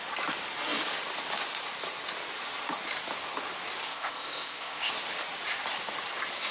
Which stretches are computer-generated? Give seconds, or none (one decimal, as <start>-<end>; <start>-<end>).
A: 3.8-4.9